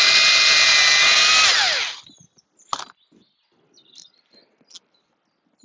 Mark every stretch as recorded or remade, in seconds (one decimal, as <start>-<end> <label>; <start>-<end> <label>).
0.0-5.6 recorded